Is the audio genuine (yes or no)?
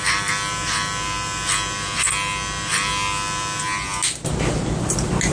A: yes